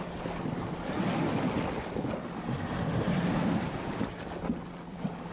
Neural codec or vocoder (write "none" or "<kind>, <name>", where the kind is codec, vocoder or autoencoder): none